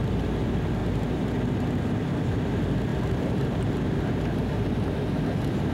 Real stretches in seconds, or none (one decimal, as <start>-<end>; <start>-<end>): 0.0-2.9; 3.7-5.7